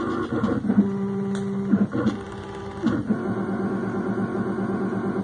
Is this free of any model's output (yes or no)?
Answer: yes